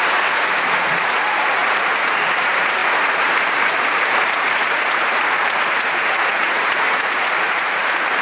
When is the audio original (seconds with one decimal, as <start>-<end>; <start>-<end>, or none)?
none